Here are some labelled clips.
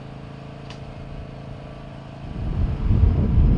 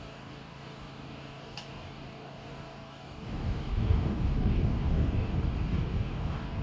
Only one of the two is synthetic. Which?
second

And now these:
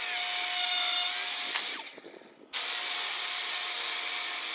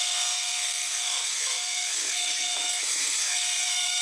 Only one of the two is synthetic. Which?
second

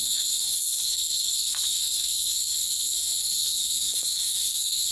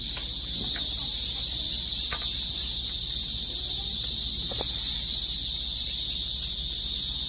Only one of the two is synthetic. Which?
first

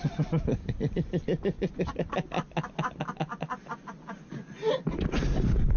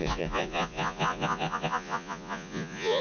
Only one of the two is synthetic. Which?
second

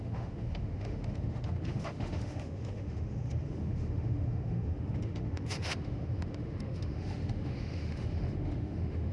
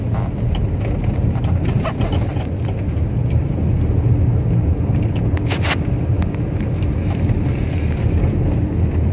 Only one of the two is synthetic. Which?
first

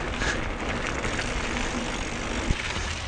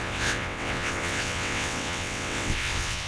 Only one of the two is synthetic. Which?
second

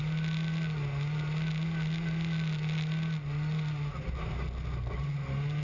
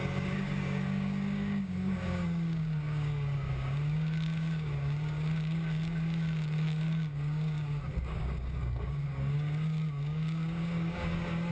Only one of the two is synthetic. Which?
second